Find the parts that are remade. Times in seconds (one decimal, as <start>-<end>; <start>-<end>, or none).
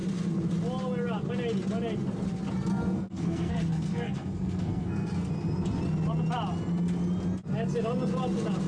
2.7-5.3